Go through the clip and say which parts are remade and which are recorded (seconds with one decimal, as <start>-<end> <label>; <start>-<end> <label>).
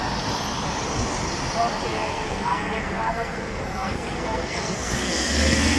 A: 0.0-1.9 recorded; 1.9-5.8 remade